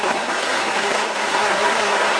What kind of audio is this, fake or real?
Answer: fake